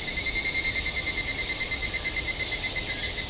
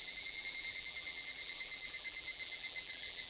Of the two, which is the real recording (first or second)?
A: first